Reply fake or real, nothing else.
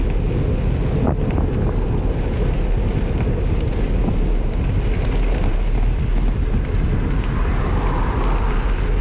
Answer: real